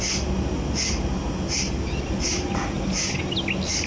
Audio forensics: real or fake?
real